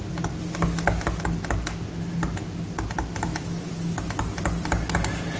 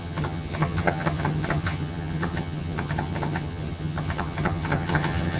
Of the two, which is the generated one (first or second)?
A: second